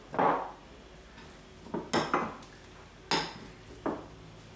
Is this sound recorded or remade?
recorded